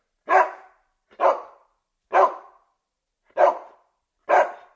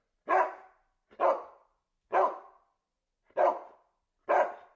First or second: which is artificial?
first